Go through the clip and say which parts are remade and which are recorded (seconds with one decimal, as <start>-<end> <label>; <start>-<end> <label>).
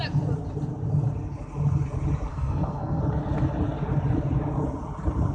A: 0.0-2.3 recorded; 2.3-3.0 remade; 3.0-5.3 recorded